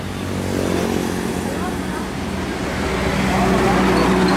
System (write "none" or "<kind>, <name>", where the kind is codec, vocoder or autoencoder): none